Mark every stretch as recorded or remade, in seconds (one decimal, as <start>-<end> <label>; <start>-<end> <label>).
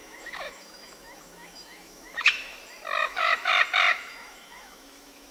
0.0-2.6 remade; 2.6-3.0 recorded; 3.0-3.5 remade; 3.5-3.9 recorded; 3.9-5.3 remade